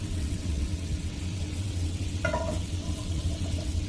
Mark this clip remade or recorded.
remade